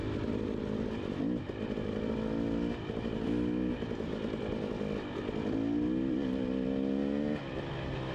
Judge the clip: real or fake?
real